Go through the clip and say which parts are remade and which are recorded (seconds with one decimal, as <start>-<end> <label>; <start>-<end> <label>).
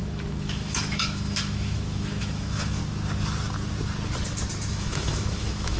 0.0-2.8 remade; 2.8-4.7 recorded; 4.7-5.8 remade